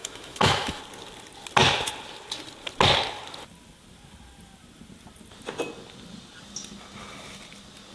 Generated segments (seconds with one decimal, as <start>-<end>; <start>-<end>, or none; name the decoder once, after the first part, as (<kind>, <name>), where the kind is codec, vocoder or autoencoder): 0.0-0.8 (autoencoder, DAC-VAE)